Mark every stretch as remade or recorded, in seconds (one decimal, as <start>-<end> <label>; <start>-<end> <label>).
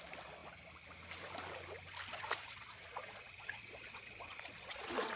0.0-2.1 recorded; 2.1-5.2 remade